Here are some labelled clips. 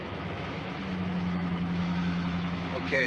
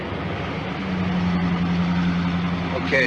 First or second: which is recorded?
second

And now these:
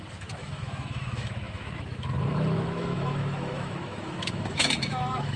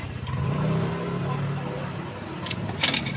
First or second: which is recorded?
second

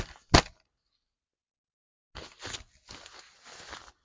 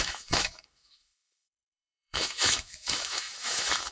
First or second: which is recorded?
first